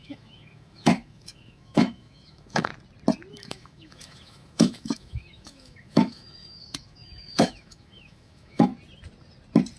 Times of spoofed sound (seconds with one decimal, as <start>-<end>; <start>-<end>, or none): 0.0-2.7; 3.3-8.7